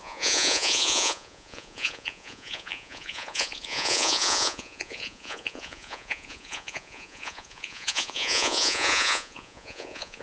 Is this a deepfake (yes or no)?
yes